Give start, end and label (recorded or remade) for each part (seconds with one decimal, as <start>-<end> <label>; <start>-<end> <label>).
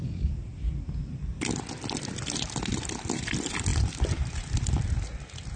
0.0-5.6 recorded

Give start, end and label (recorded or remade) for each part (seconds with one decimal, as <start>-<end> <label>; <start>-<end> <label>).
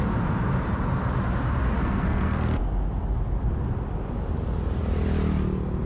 0.0-1.8 recorded; 1.8-2.6 remade; 2.6-5.9 recorded